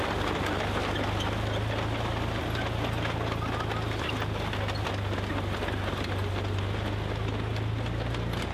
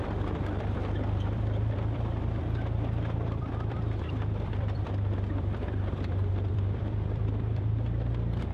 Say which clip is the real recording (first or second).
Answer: first